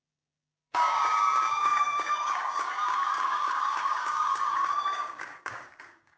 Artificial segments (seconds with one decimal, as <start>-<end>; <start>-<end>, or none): 0.0-6.2